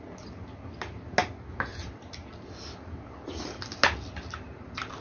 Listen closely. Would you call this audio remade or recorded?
recorded